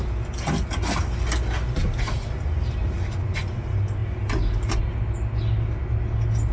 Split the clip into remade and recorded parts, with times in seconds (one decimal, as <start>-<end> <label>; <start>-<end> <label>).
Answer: 0.0-6.5 recorded